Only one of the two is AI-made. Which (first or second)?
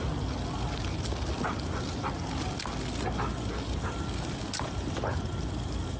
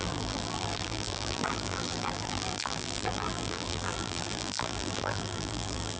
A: second